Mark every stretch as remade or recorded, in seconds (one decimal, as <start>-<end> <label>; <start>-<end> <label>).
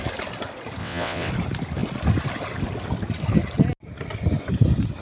0.0-0.8 recorded; 0.8-1.3 remade; 1.3-5.0 recorded